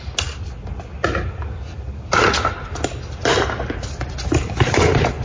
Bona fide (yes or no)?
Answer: yes